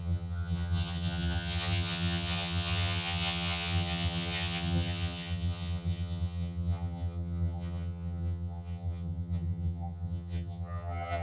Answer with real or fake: fake